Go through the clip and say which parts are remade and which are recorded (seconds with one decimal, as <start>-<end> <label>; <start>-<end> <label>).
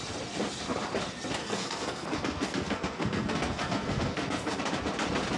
0.0-1.4 recorded; 1.4-4.6 remade; 4.6-5.4 recorded